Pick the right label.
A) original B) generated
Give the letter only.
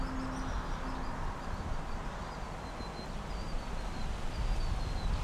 A